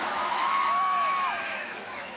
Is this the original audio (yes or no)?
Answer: no